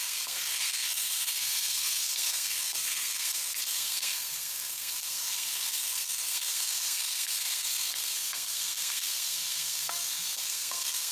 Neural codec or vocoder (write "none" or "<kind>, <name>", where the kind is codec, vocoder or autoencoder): codec, SNAC